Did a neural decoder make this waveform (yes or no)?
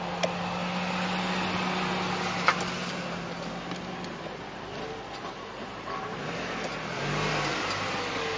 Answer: no